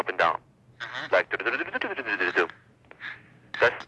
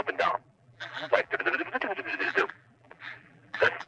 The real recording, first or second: first